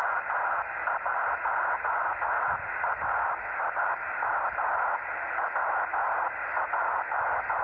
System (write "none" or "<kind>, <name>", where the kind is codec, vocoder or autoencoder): vocoder, BigVGAN v2